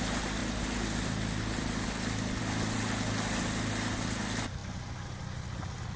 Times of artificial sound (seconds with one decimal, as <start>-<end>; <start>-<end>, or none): none